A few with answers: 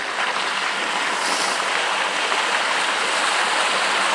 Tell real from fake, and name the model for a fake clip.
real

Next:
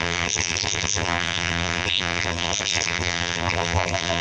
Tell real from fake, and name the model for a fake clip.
fake, vocoder, BigVGAN v2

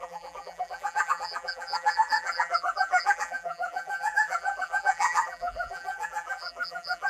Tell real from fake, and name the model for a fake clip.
fake, vocoder, BigVGAN v2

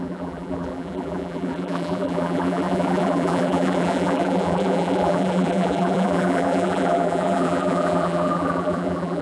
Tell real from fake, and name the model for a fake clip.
fake, vocoder, BigVGAN v2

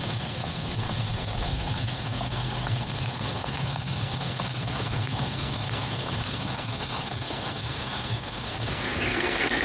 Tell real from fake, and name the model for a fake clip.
fake, codec, SNAC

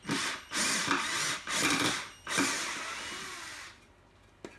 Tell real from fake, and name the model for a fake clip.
real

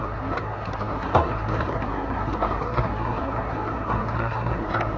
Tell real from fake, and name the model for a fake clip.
fake, codec, SNAC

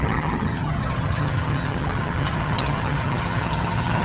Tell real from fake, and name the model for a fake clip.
fake, vocoder, HiFi-GAN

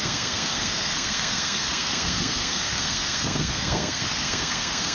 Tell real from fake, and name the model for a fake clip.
fake, codec, SNAC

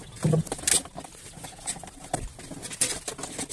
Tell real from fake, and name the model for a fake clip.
real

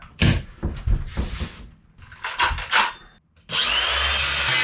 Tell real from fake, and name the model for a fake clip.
real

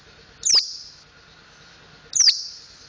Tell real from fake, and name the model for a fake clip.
real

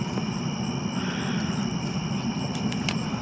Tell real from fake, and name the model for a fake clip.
real